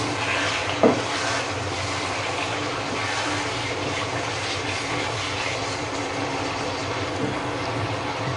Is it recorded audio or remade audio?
recorded